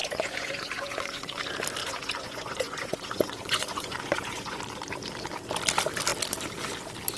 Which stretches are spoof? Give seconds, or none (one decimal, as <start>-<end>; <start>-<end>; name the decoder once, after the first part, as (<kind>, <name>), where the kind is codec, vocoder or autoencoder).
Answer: 0.0-1.4 (vocoder, Vocos); 1.8-4.6